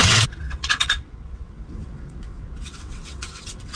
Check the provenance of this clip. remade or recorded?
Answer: remade